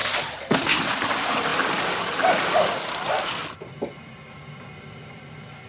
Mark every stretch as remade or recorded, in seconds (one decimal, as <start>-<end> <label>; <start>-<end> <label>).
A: 0.0-5.7 recorded